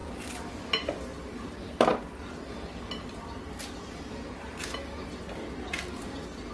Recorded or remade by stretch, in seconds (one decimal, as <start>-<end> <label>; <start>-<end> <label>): 0.0-6.5 recorded

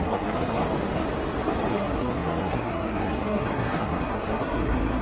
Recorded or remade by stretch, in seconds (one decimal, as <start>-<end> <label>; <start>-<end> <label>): 0.0-0.6 remade; 0.6-1.7 recorded; 1.7-5.0 remade

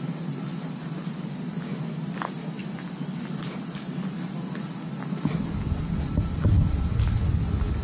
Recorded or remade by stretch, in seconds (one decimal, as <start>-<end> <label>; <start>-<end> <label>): 0.0-7.8 recorded

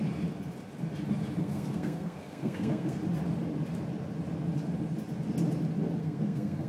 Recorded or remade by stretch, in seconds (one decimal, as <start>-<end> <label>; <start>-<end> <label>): 0.0-1.4 recorded; 1.4-3.0 remade; 3.0-6.0 recorded; 6.0-6.7 remade

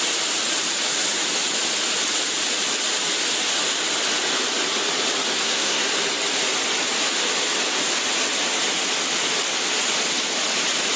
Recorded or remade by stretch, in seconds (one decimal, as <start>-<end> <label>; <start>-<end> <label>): 0.0-5.3 recorded; 5.3-5.9 remade; 5.9-11.0 recorded

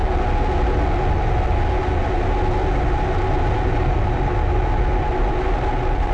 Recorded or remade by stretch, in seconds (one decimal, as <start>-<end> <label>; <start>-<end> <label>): 0.0-6.1 recorded

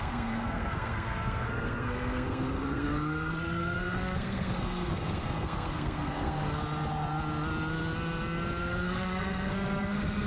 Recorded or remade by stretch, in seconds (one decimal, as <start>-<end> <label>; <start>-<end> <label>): 0.0-6.6 remade; 6.6-8.6 recorded; 8.6-10.3 remade